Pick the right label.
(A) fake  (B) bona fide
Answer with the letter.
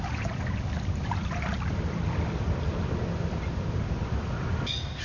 B